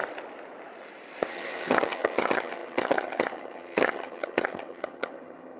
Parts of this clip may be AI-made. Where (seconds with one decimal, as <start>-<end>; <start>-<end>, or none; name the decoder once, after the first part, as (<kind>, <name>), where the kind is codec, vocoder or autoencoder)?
1.3-5.6 (vocoder, HiFi-GAN)